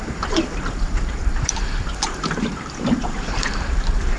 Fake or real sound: fake